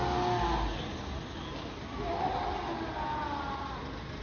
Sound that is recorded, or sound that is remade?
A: recorded